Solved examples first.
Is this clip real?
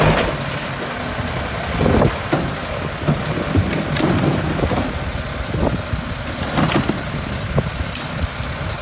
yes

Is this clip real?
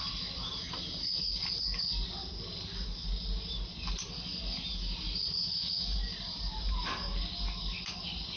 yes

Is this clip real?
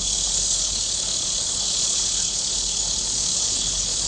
no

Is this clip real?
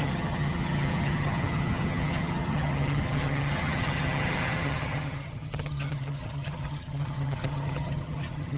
no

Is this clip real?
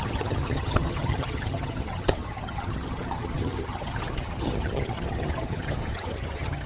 no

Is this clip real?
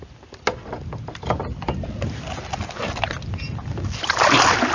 yes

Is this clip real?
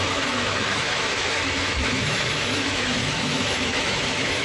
no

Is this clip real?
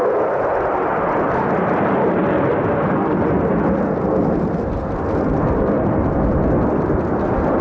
yes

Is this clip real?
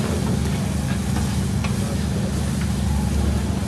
yes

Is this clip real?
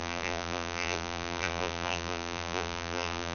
no